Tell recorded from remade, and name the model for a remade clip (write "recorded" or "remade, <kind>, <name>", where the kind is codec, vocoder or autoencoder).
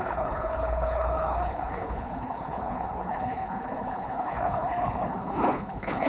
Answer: remade, codec, HILCodec